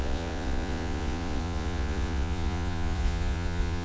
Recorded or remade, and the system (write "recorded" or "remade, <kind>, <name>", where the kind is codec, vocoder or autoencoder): remade, vocoder, Vocos